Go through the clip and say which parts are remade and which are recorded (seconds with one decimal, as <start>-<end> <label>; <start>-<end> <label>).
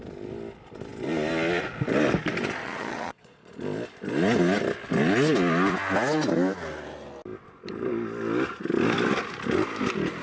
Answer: 0.0-2.6 recorded; 2.6-3.5 remade; 3.5-10.2 recorded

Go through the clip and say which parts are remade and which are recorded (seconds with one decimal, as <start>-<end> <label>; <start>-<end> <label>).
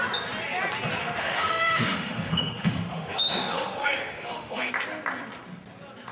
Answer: 0.0-1.0 recorded; 1.0-4.7 remade; 4.7-6.1 recorded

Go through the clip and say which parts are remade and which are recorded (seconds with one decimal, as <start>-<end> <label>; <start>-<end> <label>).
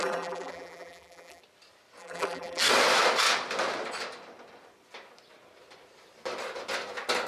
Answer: 0.0-1.4 remade; 1.4-2.0 recorded; 2.0-2.6 remade; 2.6-7.3 recorded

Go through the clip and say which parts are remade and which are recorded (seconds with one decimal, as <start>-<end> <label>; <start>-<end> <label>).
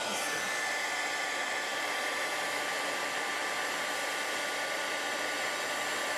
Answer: 0.0-1.7 recorded; 1.7-2.5 remade; 2.5-3.4 recorded; 3.4-4.5 remade; 4.5-6.2 recorded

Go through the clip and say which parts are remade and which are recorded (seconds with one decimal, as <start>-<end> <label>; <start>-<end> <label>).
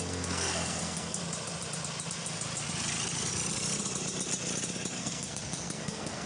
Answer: 0.0-1.2 remade; 1.2-5.0 recorded; 5.0-6.3 remade